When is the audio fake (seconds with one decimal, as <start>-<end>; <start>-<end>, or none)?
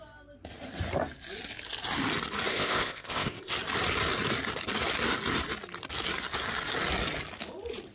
2.5-3.5